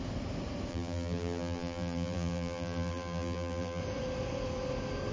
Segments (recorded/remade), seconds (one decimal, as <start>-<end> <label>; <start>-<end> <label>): 0.0-0.7 recorded; 0.7-3.8 remade; 3.8-5.1 recorded